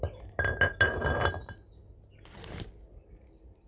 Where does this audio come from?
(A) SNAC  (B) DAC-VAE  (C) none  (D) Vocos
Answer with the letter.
C